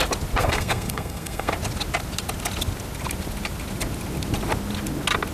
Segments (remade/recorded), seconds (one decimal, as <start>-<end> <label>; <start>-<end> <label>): 0.0-0.4 recorded; 0.4-1.5 remade; 1.5-5.3 recorded